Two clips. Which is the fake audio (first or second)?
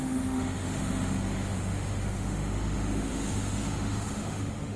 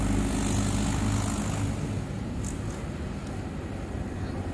first